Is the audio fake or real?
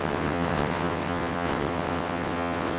fake